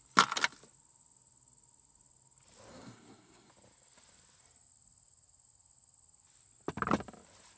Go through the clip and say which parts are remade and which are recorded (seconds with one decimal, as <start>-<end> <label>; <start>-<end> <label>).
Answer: 0.0-2.7 recorded; 2.7-3.5 remade; 3.5-7.6 recorded